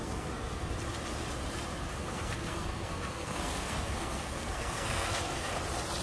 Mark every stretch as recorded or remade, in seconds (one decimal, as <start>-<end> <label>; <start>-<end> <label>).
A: 0.0-0.7 remade; 0.7-1.9 recorded; 1.9-5.5 remade; 5.5-6.0 recorded